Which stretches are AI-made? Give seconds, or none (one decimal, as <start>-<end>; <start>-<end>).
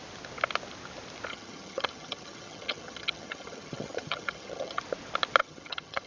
1.3-4.8; 5.4-6.1